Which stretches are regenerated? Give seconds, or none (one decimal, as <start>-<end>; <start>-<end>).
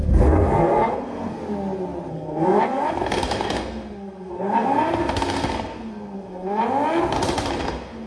0.0-1.4; 2.1-6.6; 7.6-8.1